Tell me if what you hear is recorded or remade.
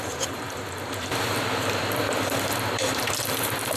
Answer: remade